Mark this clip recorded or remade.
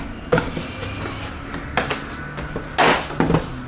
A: recorded